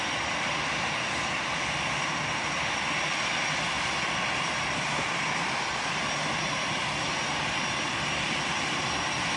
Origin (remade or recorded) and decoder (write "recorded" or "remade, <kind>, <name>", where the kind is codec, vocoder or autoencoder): recorded